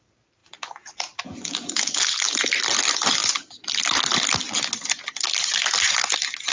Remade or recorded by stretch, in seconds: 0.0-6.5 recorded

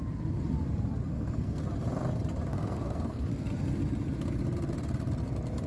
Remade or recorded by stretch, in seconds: 0.0-1.1 recorded; 1.1-1.6 remade; 1.6-2.5 recorded; 2.5-3.3 remade; 3.3-5.7 recorded